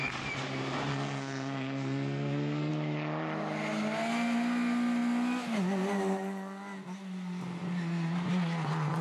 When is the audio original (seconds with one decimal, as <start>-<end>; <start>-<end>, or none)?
0.0-0.9; 2.7-9.0